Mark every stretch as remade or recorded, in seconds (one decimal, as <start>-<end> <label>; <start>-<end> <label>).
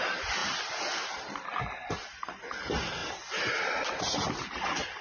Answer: 0.0-5.0 recorded